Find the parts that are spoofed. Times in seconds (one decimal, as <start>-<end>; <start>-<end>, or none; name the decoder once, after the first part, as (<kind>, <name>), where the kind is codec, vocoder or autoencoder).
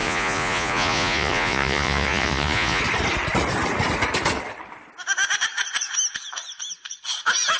0.0-2.8 (vocoder, Vocos)